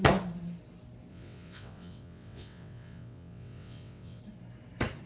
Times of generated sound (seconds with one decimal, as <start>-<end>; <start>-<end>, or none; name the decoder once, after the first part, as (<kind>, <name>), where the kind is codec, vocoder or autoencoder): 1.1-4.2 (vocoder, WaveNeXt)